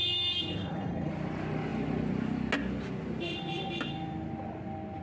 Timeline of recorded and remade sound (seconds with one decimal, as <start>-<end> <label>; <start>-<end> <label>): 0.0-0.5 recorded; 0.5-1.1 remade; 1.1-5.0 recorded